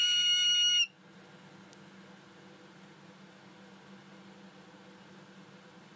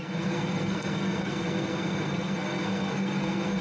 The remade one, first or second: second